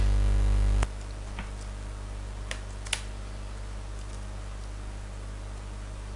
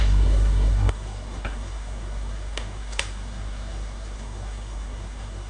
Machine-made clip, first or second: second